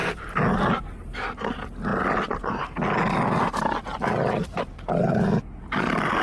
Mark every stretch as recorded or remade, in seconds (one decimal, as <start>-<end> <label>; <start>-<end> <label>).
0.0-0.6 remade; 0.6-3.9 recorded; 3.9-4.7 remade; 4.7-6.2 recorded